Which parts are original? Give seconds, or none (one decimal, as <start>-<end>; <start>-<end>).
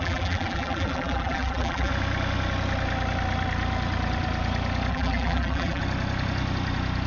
1.9-4.9; 5.8-7.1